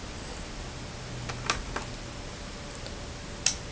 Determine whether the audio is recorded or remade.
recorded